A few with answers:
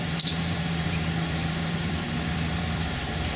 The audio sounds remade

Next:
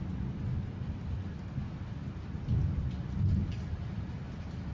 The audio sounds recorded